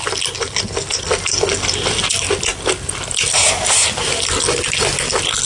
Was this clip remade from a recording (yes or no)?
no